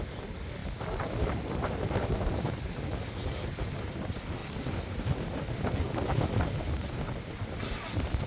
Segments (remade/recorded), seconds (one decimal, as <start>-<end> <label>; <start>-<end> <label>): 0.0-8.3 recorded